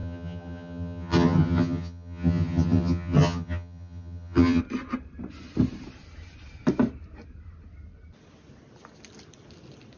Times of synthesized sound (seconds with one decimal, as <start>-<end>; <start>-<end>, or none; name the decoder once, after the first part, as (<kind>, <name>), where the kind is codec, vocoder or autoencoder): 0.0-4.6 (vocoder, HiFi-GAN)